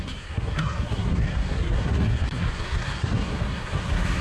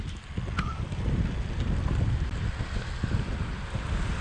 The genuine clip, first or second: second